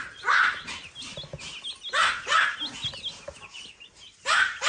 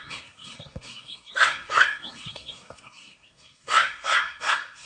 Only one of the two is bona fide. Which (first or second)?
first